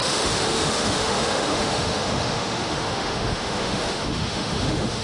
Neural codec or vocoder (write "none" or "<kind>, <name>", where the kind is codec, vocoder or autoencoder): autoencoder, DAC-VAE